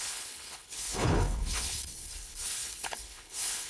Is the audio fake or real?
fake